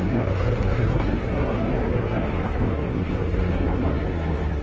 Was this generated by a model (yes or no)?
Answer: yes